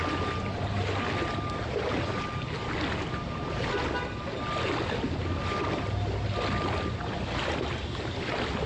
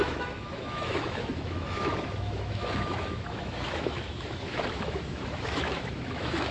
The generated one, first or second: second